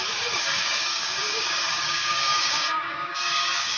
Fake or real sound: fake